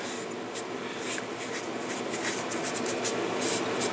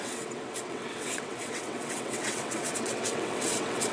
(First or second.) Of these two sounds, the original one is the first